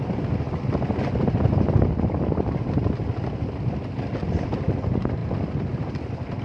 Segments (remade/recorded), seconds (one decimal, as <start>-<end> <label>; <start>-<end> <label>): 0.0-6.4 recorded